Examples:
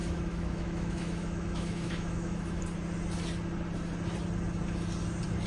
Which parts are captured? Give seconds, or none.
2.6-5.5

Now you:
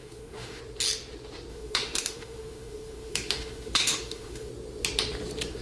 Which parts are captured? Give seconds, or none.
0.6-1.5; 4.5-5.6

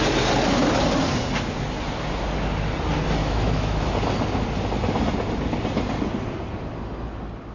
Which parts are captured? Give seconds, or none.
0.0-3.2; 3.8-7.5

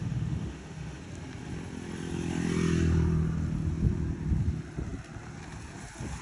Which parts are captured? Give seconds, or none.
1.0-6.2

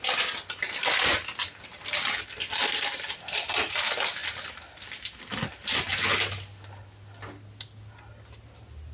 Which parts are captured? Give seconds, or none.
0.0-8.9

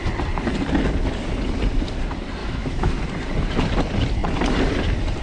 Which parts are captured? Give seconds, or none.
0.0-2.4; 3.0-5.2